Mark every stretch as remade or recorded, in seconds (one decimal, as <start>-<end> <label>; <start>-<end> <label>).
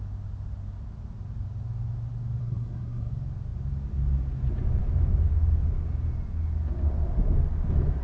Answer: 0.0-2.4 recorded; 2.4-3.1 remade; 3.1-8.0 recorded